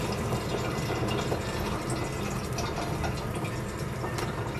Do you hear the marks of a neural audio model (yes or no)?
no